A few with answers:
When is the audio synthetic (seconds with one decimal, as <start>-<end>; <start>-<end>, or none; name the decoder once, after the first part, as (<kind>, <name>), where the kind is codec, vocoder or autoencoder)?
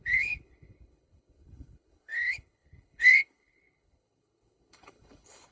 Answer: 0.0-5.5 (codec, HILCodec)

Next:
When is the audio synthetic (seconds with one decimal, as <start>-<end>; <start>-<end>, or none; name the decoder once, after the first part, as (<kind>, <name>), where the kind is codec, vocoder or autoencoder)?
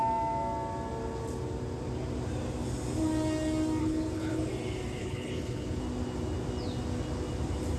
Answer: 3.8-4.5 (codec, HILCodec); 5.0-5.8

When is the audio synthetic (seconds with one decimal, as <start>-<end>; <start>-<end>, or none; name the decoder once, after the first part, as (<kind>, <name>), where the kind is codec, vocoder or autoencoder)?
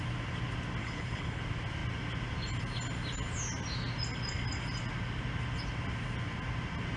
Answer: 0.8-1.4 (codec, HILCodec)